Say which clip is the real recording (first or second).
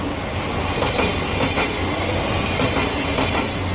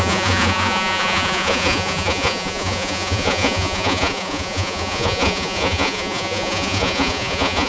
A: first